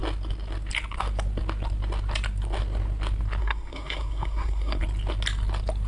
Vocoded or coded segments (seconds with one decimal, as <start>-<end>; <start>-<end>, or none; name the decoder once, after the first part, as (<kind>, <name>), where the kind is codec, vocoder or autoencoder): 3.4-4.8 (codec, SNAC)